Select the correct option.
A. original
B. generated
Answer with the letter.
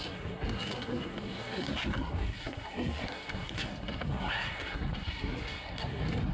B